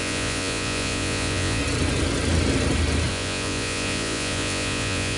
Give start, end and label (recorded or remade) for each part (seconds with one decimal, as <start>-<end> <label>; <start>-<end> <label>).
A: 0.0-1.6 remade; 1.6-3.1 recorded; 3.1-5.2 remade